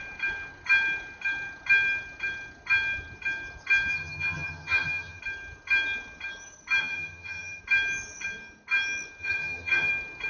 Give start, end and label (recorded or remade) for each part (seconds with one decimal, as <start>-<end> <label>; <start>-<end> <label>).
0.0-3.9 recorded; 3.9-5.2 remade; 5.2-6.8 recorded; 6.8-7.6 remade; 7.6-9.2 recorded; 9.2-9.9 remade; 9.9-10.3 recorded